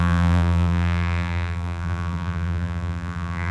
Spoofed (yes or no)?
yes